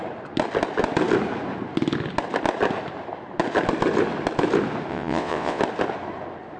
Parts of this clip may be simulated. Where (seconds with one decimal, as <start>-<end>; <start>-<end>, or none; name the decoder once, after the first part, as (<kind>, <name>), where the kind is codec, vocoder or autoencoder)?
4.9-5.6 (vocoder, WaveNeXt)